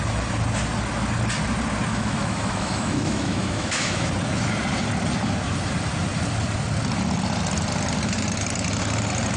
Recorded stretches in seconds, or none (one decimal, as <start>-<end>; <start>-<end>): 0.0-1.9; 4.1-9.4